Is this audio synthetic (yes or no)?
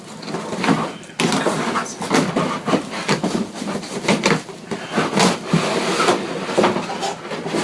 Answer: no